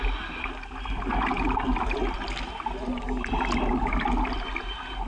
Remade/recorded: recorded